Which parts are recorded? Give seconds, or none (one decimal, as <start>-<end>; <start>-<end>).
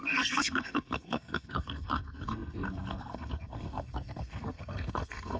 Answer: none